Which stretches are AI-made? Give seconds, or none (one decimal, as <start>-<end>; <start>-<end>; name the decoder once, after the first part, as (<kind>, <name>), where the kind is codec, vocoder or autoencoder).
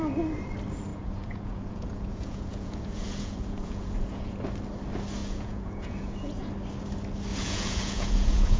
0.9-4.4 (vocoder, Vocos); 5.2-6.4; 7.3-8.6